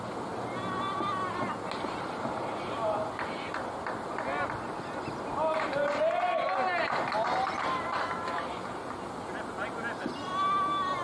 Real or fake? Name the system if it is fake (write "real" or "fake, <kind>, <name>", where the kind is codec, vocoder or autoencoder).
real